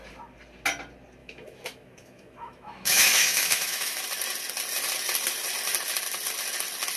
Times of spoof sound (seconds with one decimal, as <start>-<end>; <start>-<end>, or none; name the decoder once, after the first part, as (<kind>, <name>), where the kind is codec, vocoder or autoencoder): 1.2-4.0 (autoencoder, DAC-VAE)